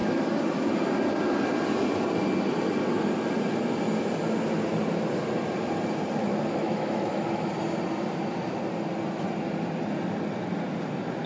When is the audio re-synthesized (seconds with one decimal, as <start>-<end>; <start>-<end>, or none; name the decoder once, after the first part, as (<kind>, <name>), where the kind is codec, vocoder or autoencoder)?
6.6-7.5 (autoencoder, DAC-VAE)